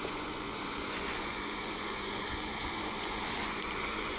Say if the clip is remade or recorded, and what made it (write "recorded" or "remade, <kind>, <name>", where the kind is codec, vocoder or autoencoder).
remade, vocoder, Vocos